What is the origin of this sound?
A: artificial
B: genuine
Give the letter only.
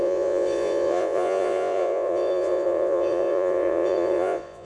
A